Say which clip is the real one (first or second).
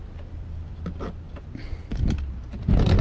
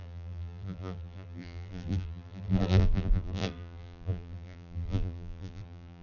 first